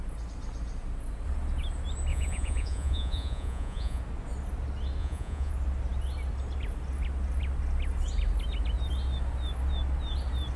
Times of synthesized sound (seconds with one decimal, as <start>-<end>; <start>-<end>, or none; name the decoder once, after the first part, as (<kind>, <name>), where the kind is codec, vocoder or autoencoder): 2.1-4.0 (vocoder, Vocos); 5.0-5.5